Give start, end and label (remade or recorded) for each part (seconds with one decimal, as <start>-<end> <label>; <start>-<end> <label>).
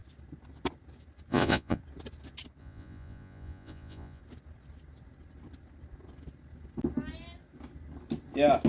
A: 0.0-1.3 recorded; 1.3-1.8 remade; 1.8-2.6 recorded; 2.6-4.2 remade; 4.2-8.7 recorded